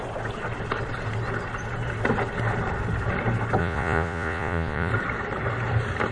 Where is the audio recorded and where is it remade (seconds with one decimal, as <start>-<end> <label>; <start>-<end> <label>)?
0.0-3.6 recorded; 3.6-4.9 remade; 4.9-6.1 recorded